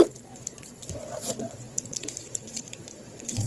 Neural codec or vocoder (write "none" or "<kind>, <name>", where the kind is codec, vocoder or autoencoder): vocoder, Vocos